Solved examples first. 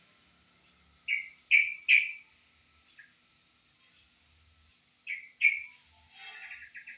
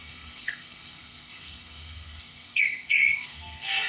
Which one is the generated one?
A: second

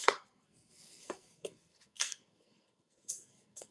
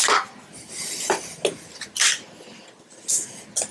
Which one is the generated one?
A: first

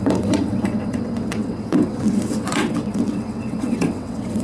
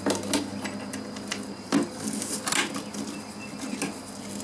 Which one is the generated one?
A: first